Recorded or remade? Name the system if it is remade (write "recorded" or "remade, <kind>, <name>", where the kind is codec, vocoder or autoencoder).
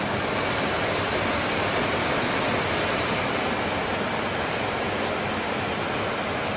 recorded